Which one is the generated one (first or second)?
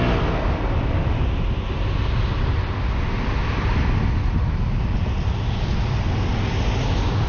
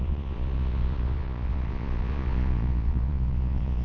second